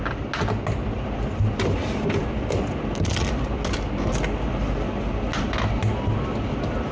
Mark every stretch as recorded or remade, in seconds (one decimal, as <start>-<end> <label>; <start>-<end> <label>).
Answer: 0.0-6.9 recorded